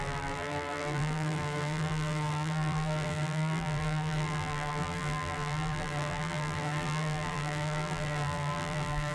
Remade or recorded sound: remade